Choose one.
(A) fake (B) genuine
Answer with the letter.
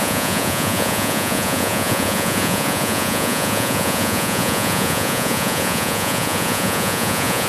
A